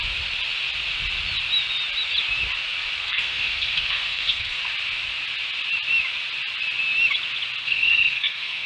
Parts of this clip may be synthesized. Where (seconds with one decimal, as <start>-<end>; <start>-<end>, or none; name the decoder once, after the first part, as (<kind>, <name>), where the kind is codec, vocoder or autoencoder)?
3.0-4.6 (codec, SNAC); 7.6-8.7